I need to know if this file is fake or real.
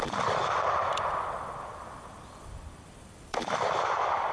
fake